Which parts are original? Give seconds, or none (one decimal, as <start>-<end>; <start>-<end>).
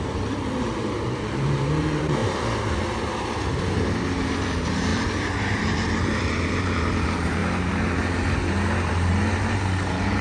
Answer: 2.2-4.3; 7.4-8.9